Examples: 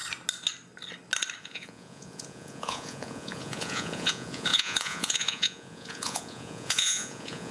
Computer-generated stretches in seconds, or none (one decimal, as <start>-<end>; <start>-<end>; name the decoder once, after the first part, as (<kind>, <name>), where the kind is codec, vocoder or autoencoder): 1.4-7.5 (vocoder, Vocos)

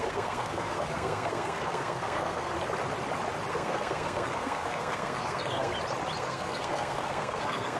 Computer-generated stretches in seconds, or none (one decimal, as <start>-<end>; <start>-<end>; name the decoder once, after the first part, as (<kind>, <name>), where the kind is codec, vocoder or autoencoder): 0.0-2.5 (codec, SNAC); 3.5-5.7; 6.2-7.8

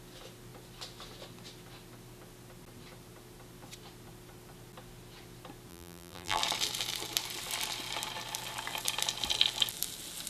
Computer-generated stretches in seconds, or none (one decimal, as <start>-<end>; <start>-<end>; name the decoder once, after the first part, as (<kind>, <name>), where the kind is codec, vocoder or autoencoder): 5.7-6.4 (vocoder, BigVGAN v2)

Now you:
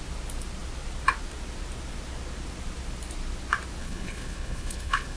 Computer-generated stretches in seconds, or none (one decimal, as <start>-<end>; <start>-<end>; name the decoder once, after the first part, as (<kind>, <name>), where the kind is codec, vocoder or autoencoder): 3.8-5.2 (codec, HILCodec)